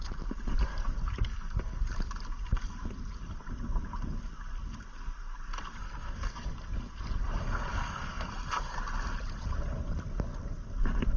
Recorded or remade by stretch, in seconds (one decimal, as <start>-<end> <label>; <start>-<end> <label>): 0.0-1.3 recorded; 1.3-1.8 remade; 1.8-5.8 recorded; 5.8-6.5 remade; 6.5-7.7 recorded; 7.7-8.3 remade; 8.3-11.2 recorded